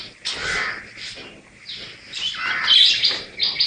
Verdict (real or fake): real